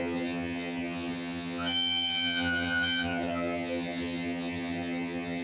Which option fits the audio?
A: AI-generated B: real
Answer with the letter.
A